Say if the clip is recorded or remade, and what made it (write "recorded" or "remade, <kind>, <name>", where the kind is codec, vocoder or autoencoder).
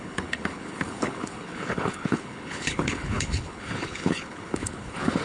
remade, codec, HILCodec